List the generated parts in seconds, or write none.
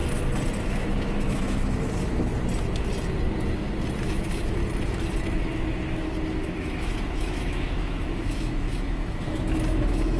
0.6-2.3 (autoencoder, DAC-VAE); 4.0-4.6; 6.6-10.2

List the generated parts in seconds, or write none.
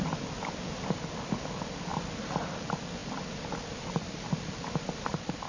none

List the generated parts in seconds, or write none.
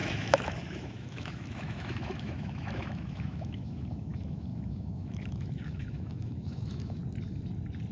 0.0-7.0 (autoencoder, DAC-VAE)